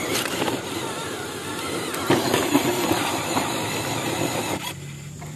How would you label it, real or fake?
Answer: real